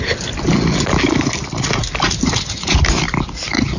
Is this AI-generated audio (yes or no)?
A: no